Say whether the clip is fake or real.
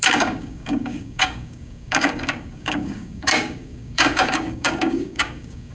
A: fake